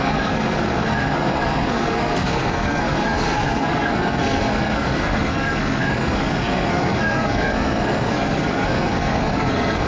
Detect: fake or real fake